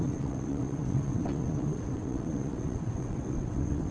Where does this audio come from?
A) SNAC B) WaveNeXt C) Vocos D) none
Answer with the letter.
B